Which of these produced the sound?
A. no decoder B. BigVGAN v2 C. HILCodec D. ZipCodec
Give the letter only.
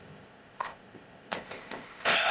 D